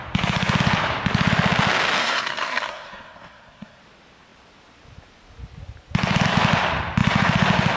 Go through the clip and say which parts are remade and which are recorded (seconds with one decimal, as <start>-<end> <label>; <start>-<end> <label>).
0.0-2.0 recorded; 2.0-3.8 remade; 3.8-7.8 recorded